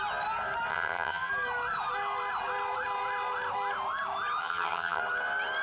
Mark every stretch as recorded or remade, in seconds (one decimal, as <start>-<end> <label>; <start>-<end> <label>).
0.0-0.7 recorded; 0.7-1.3 remade; 1.3-4.4 recorded; 4.4-5.0 remade; 5.0-5.6 recorded